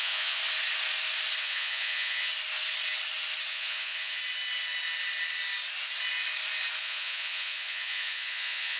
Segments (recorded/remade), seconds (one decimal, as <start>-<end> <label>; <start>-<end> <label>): 0.0-0.4 remade; 0.4-1.4 recorded; 1.4-2.3 remade; 2.3-3.5 recorded; 3.5-4.2 remade; 4.2-6.8 recorded; 6.8-8.8 remade